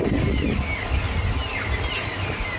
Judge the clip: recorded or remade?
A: recorded